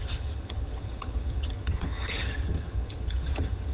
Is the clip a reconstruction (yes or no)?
yes